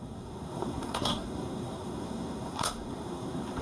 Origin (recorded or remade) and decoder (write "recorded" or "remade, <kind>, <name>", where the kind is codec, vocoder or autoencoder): remade, codec, SNAC